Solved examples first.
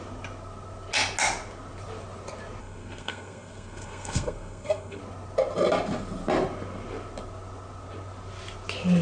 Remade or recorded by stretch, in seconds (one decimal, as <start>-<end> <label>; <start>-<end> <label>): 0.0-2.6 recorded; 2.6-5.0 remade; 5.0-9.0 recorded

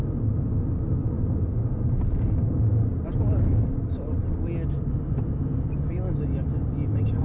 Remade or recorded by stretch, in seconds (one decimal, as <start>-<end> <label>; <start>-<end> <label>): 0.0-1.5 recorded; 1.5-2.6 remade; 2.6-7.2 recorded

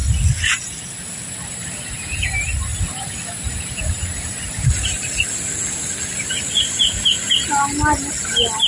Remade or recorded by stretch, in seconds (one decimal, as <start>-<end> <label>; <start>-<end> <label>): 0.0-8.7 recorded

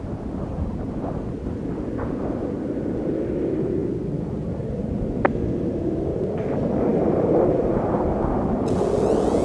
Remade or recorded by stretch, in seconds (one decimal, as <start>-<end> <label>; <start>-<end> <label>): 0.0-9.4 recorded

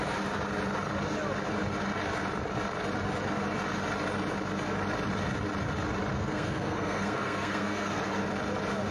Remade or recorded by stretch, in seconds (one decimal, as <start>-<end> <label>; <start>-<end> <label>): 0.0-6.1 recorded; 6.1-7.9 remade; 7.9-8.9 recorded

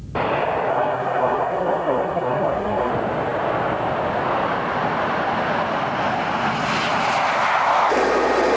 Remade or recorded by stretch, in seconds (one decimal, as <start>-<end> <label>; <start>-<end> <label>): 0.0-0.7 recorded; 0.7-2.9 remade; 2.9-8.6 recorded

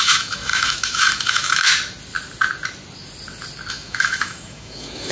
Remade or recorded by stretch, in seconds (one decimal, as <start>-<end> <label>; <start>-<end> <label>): 0.0-1.7 remade; 1.7-3.7 recorded; 3.7-5.1 remade